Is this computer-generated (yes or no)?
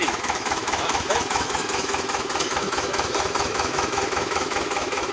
yes